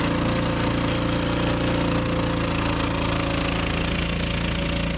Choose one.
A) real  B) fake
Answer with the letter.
A